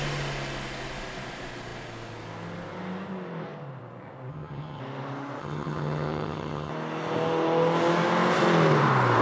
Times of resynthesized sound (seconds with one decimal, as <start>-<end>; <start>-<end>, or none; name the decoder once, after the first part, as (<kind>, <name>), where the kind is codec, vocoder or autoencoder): 4.3-4.8 (vocoder, HiFi-GAN); 5.4-6.7